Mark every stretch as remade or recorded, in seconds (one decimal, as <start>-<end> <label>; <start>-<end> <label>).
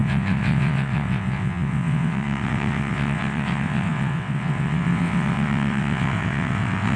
0.0-7.0 remade